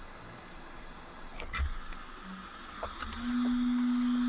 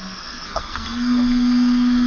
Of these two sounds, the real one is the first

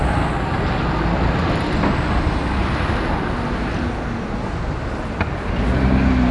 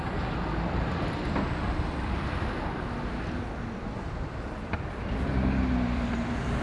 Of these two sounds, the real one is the first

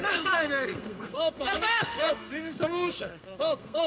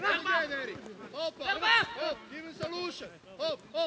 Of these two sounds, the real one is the second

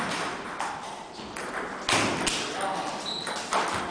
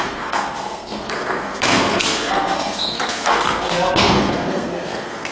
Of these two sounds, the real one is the first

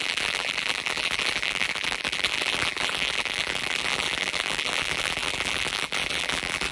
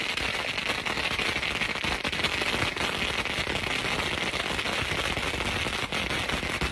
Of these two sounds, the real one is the second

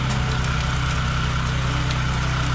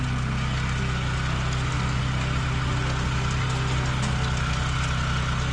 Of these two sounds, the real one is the second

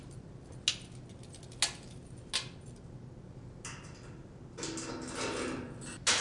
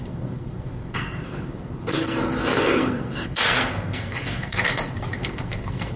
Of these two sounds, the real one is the first